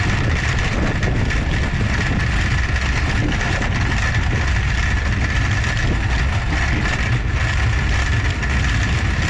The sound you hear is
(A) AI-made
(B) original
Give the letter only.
B